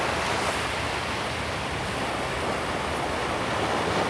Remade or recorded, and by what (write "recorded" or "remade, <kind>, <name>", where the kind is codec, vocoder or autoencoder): recorded